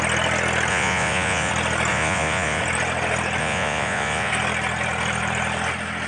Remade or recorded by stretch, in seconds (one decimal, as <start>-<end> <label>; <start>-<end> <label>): 0.0-0.7 recorded; 0.7-1.5 remade; 1.5-1.9 recorded; 1.9-2.6 remade; 2.6-3.4 recorded; 3.4-4.3 remade; 4.3-6.1 recorded